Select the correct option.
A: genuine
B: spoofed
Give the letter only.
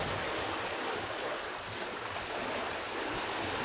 A